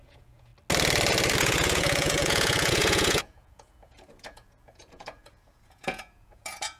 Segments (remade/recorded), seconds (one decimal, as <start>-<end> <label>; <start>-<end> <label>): 0.0-0.5 remade; 0.5-1.4 recorded; 1.4-6.8 remade